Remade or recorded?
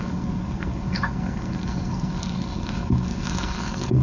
remade